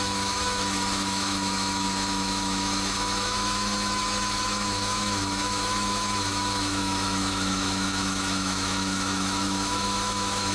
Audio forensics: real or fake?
fake